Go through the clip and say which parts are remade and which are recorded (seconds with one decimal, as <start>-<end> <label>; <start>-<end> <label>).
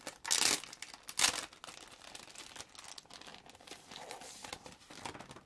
0.0-5.5 recorded